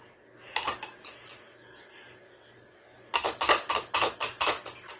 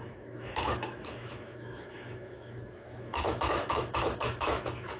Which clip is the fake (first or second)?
second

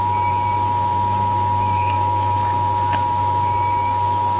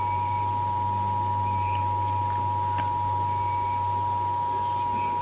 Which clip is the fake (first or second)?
first